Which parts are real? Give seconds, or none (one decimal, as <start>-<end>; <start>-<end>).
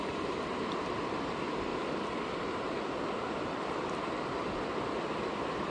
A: 0.0-5.7